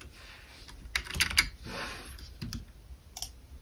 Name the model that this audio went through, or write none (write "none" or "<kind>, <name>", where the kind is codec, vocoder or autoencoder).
none